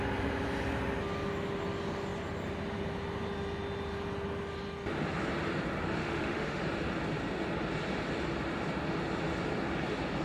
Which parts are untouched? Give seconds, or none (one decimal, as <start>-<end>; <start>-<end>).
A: 0.0-6.0; 6.6-10.2